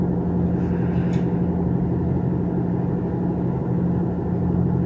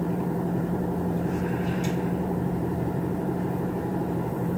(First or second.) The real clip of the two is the first